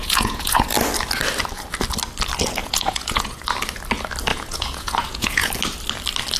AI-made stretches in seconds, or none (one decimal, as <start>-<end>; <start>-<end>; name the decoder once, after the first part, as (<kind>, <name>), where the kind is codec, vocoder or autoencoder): 0.0-0.7 (vocoder, Vocos); 2.6-3.4; 4.3-5.5